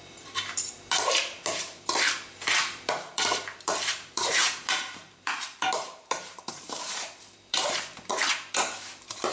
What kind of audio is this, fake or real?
fake